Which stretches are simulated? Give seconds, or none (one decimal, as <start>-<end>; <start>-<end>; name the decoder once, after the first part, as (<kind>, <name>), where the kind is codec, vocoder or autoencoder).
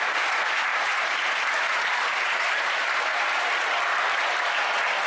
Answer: 0.7-1.2 (vocoder, BigVGAN v2); 2.1-3.5